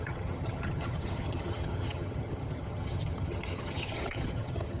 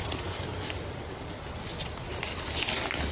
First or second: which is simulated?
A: first